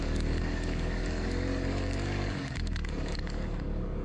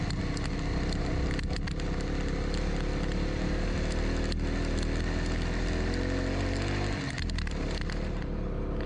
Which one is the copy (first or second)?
first